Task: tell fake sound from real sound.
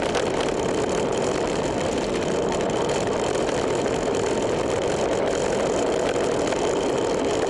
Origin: fake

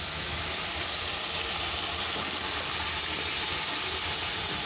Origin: real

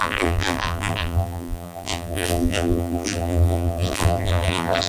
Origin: fake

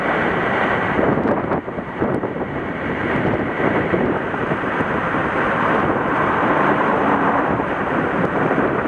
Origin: fake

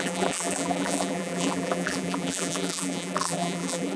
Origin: fake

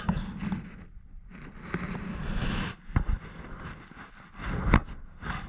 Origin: real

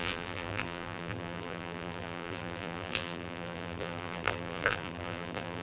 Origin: fake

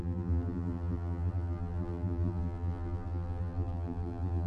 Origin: fake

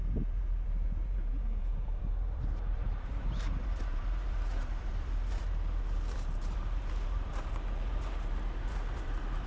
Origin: fake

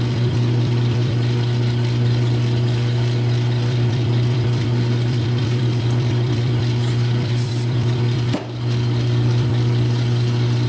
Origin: fake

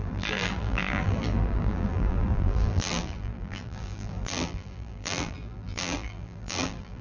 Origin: fake